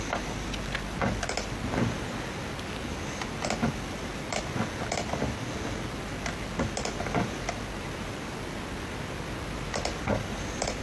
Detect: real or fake real